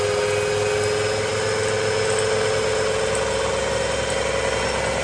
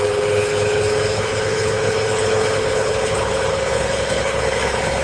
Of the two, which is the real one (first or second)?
first